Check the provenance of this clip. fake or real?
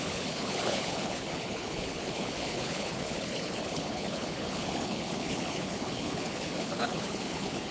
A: fake